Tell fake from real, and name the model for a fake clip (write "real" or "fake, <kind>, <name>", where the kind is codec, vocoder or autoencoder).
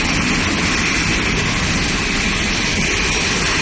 real